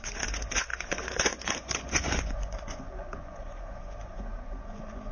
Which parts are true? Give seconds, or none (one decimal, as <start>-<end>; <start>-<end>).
none